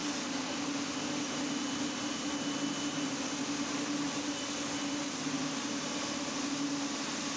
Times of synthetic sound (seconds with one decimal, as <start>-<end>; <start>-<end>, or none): none